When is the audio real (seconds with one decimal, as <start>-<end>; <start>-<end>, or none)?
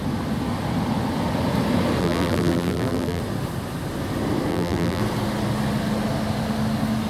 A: 0.0-2.0; 3.2-4.5; 5.0-7.1